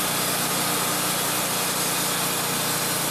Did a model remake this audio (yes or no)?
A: no